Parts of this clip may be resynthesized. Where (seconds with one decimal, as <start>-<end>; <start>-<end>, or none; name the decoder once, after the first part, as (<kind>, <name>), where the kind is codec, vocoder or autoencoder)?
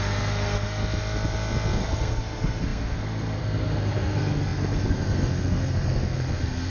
0.0-0.8 (codec, SNAC); 1.8-6.7